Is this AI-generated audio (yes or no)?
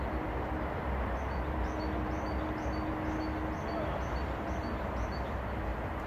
no